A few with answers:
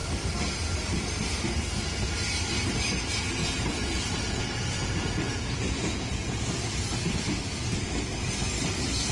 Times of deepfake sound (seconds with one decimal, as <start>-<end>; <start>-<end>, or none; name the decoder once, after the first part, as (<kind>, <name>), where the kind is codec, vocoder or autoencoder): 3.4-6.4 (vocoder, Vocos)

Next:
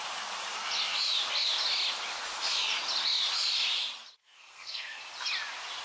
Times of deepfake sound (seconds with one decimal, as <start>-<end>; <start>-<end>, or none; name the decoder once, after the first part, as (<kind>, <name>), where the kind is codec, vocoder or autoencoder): 4.2-5.0 (codec, SNAC)

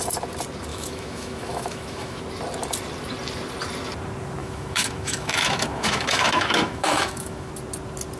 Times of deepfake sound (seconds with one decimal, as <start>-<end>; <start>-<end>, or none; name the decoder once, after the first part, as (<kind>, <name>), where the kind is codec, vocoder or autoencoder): 0.7-2.2 (autoencoder, DAC-VAE); 4.4-7.5

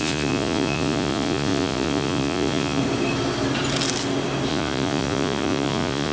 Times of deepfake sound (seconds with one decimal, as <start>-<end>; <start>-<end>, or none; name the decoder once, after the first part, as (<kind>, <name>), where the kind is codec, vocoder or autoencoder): 0.0-2.8 (vocoder, Vocos); 4.5-6.1